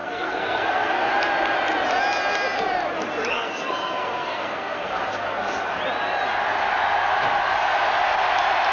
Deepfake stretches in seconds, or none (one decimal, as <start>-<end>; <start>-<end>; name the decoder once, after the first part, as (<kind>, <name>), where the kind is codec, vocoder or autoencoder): 0.0-1.1 (codec, SNAC); 3.3-5.7